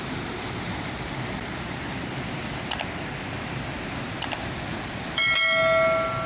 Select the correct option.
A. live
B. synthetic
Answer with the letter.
A